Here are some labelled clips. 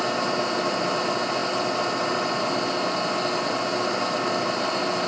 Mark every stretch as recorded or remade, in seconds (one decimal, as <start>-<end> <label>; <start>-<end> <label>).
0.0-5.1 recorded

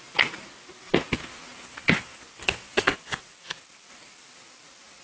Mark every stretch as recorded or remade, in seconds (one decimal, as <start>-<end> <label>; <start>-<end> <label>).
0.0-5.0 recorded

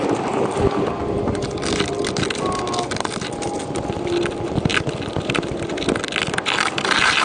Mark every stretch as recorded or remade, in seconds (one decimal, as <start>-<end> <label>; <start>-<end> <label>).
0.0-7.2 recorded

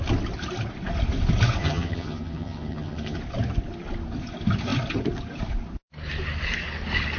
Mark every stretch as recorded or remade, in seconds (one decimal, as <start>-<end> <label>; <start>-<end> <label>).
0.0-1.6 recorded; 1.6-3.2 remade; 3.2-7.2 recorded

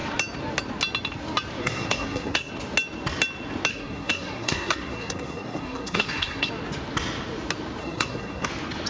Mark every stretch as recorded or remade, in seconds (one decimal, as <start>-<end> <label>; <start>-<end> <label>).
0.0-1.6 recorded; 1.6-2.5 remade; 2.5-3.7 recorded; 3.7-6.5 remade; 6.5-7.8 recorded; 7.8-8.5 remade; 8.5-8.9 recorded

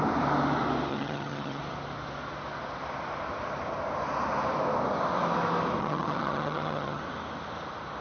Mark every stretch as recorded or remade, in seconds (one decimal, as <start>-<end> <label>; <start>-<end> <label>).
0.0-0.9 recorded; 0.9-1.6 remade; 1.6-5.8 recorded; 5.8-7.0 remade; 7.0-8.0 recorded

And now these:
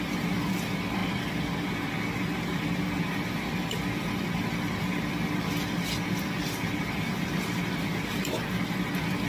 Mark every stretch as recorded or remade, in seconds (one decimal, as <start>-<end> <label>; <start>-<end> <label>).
0.0-9.3 recorded

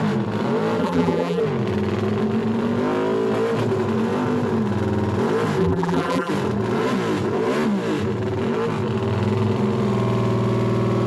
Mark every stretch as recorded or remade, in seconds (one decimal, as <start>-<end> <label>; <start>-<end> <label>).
0.0-0.8 recorded; 0.8-1.4 remade; 1.4-5.6 recorded; 5.6-6.3 remade; 6.3-11.1 recorded